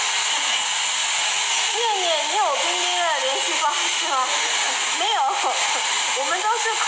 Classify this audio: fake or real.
real